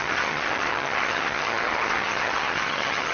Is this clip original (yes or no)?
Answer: no